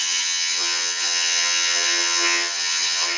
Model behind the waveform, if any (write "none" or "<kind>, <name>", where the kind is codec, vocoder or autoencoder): vocoder, HiFi-GAN